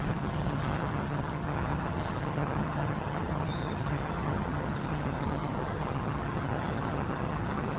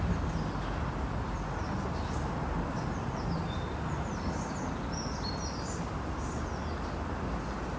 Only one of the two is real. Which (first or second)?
second